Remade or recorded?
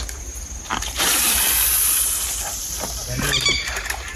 recorded